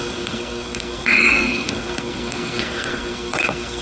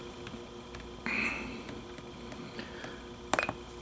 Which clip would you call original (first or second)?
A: second